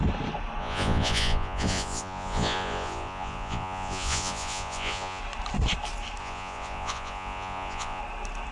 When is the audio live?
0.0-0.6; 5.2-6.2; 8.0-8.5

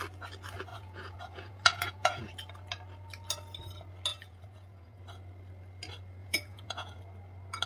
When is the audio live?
0.0-0.7; 2.3-4.1; 5.0-6.2; 7.0-7.7

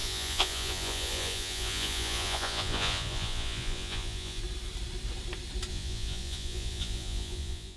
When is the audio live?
4.4-5.7

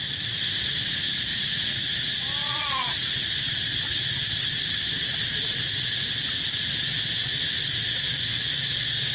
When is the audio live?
0.0-1.3; 1.9-2.4; 3.3-9.1